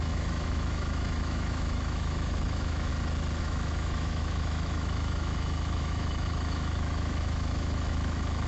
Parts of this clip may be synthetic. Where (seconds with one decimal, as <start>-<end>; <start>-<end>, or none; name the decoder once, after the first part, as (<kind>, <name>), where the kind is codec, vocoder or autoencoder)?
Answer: 0.0-2.9 (autoencoder, DAC-VAE); 3.4-8.5